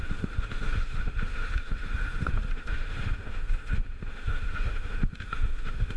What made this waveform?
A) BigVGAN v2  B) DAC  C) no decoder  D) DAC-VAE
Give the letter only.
D